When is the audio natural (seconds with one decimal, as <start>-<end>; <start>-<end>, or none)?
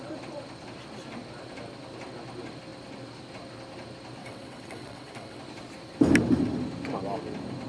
0.0-4.2; 5.4-7.7